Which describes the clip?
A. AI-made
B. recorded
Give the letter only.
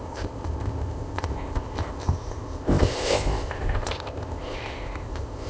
A